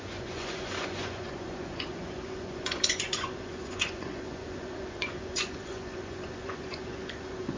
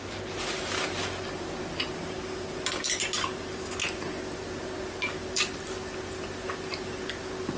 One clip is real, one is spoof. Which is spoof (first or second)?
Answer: first